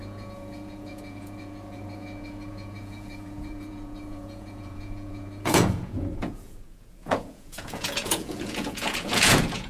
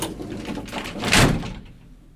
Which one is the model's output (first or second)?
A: first